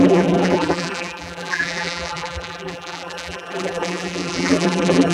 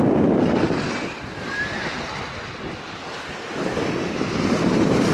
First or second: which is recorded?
second